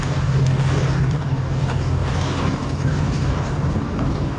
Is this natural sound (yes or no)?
no